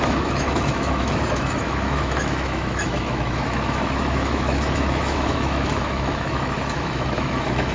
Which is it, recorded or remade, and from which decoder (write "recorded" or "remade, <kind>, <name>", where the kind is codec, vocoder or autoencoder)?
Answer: remade, autoencoder, DAC-VAE